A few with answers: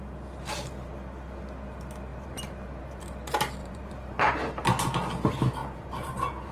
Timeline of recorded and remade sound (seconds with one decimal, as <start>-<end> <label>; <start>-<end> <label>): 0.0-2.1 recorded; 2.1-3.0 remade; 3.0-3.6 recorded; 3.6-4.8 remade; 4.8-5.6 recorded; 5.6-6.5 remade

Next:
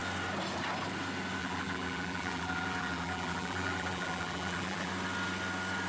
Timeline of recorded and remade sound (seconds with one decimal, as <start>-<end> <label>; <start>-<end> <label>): 0.0-1.4 recorded; 1.4-4.9 remade; 4.9-5.9 recorded

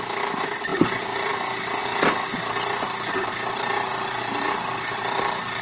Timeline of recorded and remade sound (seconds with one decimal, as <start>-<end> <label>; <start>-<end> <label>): 0.0-0.7 recorded; 0.7-1.3 remade; 1.3-5.6 recorded

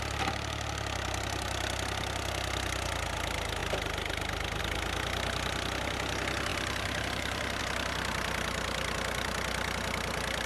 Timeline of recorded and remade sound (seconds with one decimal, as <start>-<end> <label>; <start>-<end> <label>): 0.0-6.5 recorded; 6.5-7.6 remade; 7.6-10.5 recorded

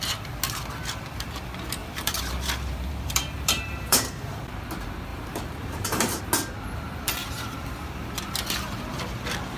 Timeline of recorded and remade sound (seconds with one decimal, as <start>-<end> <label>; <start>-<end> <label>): 0.0-1.8 recorded; 1.8-4.5 remade; 4.5-5.1 recorded; 5.1-6.2 remade; 6.2-7.2 recorded; 7.2-8.2 remade; 8.2-9.6 recorded